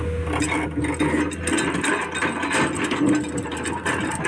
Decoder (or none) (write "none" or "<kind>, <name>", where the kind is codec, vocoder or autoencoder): none